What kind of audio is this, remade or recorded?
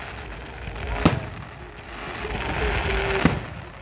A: recorded